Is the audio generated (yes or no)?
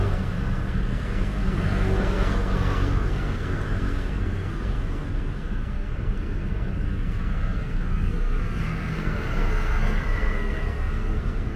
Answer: yes